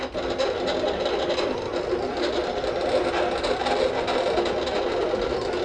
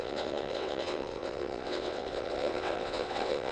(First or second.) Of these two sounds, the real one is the first